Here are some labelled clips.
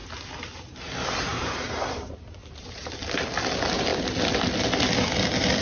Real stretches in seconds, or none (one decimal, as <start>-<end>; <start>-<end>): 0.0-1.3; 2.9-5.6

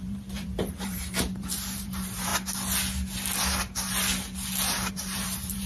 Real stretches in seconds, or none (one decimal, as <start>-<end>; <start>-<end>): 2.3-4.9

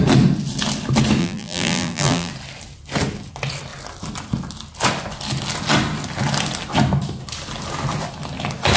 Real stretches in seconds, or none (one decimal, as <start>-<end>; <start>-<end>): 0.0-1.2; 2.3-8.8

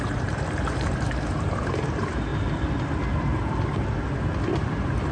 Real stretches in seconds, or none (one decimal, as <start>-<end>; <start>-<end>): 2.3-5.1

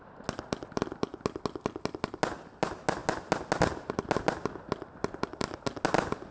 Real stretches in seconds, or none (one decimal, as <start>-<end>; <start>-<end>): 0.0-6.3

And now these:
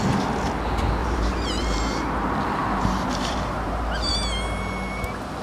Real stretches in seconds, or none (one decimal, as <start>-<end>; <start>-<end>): 0.0-1.0; 4.1-5.4

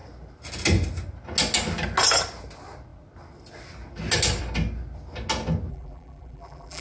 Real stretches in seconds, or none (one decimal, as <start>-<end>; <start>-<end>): 0.0-5.7